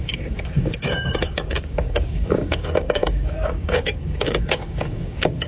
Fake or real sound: fake